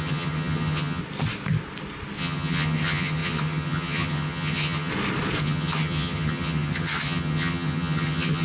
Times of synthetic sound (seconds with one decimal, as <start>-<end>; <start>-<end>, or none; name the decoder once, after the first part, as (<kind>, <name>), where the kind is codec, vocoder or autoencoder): 0.0-1.0 (vocoder, HiFi-GAN); 2.2-4.9; 5.4-8.4